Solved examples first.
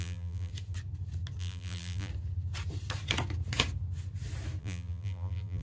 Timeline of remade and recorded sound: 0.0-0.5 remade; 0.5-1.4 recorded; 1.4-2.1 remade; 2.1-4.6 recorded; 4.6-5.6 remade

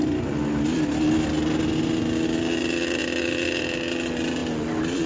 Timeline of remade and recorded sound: 0.0-5.1 recorded

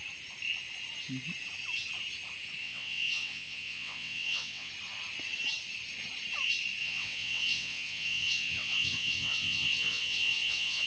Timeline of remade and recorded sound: 0.0-2.6 recorded; 2.6-4.7 remade; 4.7-6.8 recorded; 6.8-10.9 remade

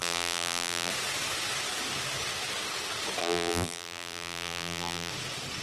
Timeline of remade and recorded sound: 0.0-0.9 remade; 0.9-3.2 recorded; 3.2-5.1 remade; 5.1-5.6 recorded

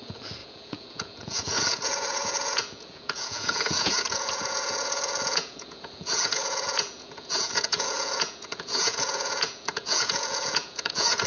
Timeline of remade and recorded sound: 0.0-11.3 remade

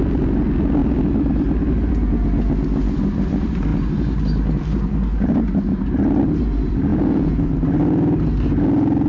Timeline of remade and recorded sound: 0.0-6.9 recorded; 6.9-7.5 remade; 7.5-9.1 recorded

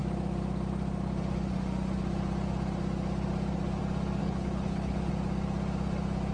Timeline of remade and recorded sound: 0.0-4.2 recorded; 4.2-5.1 remade; 5.1-6.3 recorded

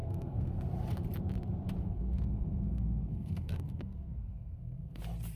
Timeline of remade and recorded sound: 0.0-0.6 remade; 0.6-1.8 recorded; 1.8-5.0 remade; 5.0-5.4 recorded